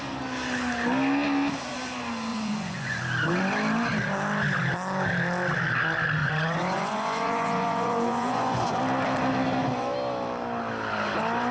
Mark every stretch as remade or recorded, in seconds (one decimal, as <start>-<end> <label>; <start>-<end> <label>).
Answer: 0.0-2.3 recorded; 2.3-3.0 remade; 3.0-6.2 recorded; 6.2-8.8 remade; 8.8-11.5 recorded